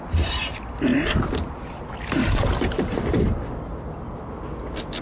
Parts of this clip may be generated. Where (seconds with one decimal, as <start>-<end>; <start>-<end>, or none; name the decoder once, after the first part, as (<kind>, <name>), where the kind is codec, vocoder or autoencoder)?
none